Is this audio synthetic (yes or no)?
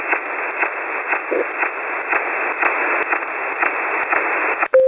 no